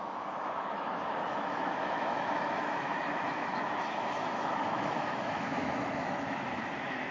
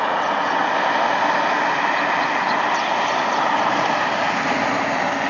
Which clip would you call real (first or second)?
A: second